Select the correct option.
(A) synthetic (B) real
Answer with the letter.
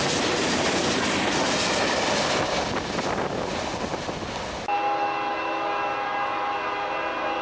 B